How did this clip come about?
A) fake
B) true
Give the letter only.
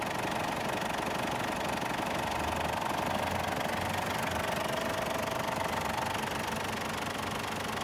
B